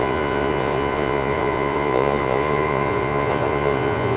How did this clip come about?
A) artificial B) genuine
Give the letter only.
A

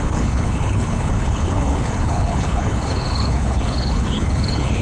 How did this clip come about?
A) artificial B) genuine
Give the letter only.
A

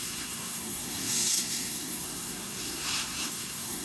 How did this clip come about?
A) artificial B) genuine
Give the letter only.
A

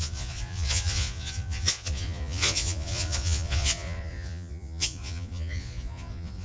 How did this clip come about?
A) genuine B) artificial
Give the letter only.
B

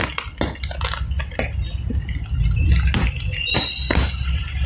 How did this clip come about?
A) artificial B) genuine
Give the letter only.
B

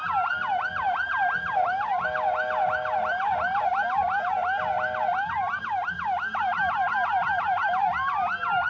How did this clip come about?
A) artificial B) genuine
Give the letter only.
B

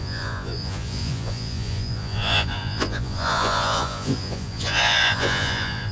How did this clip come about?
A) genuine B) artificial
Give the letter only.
B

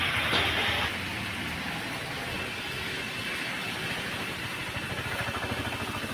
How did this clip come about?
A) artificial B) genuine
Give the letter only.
B